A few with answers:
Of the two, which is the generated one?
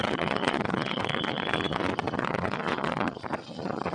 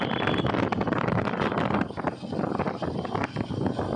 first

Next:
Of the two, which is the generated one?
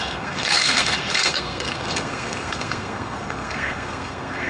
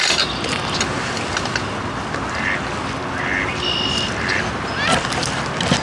first